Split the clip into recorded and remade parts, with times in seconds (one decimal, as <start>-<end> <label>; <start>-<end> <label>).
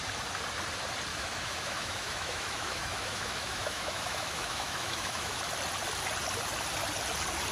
0.0-1.1 recorded; 1.1-5.4 remade; 5.4-7.5 recorded